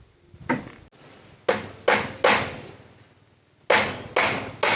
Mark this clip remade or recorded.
recorded